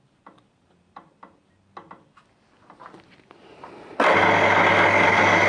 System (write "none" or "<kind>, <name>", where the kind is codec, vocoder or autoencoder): none